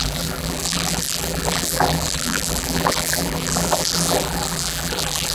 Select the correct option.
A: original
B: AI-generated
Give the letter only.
B